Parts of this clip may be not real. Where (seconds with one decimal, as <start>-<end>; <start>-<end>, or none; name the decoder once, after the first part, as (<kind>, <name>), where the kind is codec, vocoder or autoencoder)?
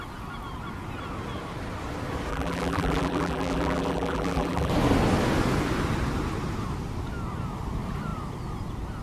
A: 2.3-4.7 (vocoder, BigVGAN v2)